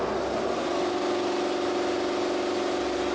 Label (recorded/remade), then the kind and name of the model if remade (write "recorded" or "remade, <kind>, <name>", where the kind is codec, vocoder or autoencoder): recorded